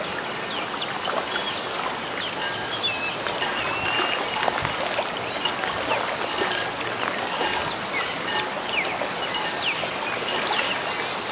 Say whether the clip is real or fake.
real